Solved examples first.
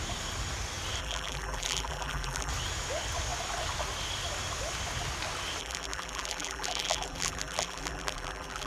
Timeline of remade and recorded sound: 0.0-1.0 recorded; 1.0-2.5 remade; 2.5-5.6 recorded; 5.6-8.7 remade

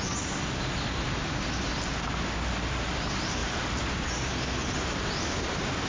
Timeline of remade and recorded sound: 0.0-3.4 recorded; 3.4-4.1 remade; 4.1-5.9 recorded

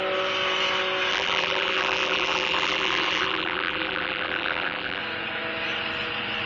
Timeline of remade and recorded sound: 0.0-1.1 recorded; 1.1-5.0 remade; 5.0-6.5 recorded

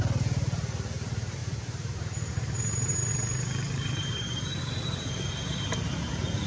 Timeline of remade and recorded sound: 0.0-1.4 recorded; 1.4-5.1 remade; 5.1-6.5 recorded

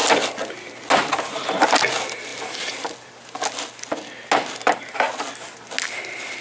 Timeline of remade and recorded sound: 0.0-6.4 recorded